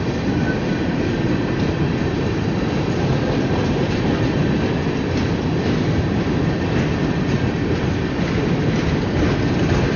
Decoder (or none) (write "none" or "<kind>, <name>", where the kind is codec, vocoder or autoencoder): none